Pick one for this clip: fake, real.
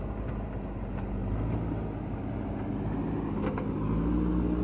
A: real